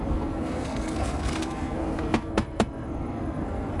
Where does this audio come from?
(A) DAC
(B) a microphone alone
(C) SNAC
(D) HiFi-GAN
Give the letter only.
C